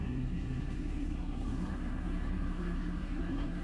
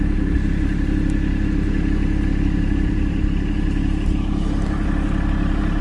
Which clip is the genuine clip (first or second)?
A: second